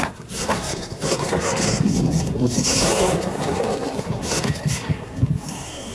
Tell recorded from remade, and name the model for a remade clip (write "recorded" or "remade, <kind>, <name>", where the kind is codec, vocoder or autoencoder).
remade, codec, SNAC